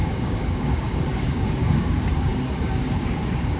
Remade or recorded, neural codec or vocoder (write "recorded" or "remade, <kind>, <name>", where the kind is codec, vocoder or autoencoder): remade, codec, DAC